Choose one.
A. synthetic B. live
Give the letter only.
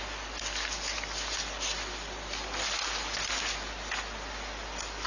B